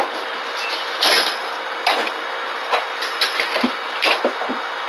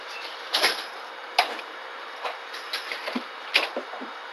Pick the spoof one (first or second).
second